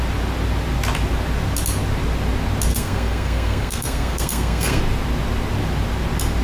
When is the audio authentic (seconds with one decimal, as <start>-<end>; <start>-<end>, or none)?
0.0-2.7; 4.8-6.4